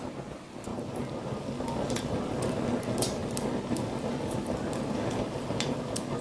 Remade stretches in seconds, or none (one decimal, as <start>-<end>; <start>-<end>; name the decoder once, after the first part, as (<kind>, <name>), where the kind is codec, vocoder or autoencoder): none